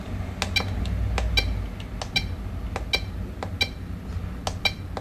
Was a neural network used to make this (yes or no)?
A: no